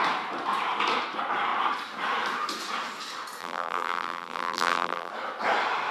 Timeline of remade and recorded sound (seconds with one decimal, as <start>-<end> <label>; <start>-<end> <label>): 0.0-3.4 recorded; 3.4-5.1 remade; 5.1-5.9 recorded